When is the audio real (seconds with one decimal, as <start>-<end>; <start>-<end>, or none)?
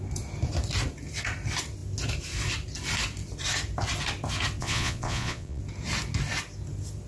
0.0-4.6; 5.6-7.1